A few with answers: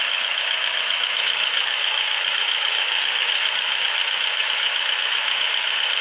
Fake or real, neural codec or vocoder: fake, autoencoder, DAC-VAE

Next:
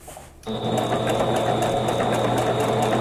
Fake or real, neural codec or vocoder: real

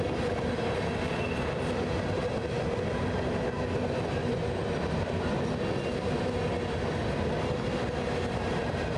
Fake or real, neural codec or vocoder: real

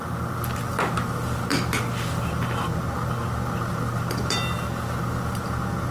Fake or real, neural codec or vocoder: real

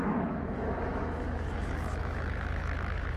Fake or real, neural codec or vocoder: fake, autoencoder, DAC-VAE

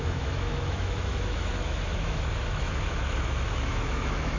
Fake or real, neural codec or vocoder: fake, autoencoder, DAC-VAE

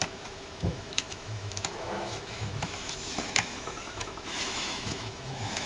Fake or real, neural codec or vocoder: fake, autoencoder, DAC-VAE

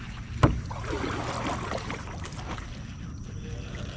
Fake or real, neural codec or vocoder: real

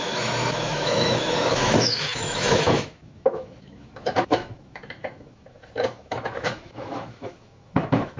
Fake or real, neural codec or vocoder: fake, autoencoder, DAC-VAE